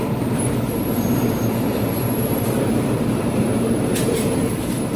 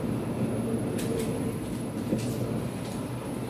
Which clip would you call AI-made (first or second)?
first